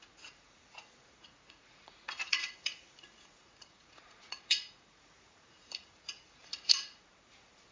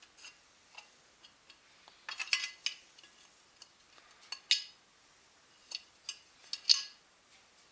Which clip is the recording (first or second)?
second